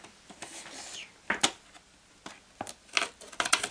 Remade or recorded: recorded